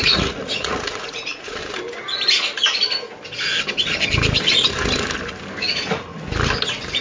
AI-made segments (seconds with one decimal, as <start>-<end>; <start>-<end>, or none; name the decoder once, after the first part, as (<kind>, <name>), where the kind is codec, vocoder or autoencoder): 0.0-1.6 (vocoder, Vocos); 5.6-6.1